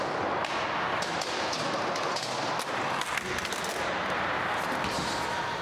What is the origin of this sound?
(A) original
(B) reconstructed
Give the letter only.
A